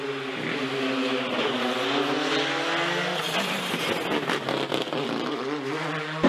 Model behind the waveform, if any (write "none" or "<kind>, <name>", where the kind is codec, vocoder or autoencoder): none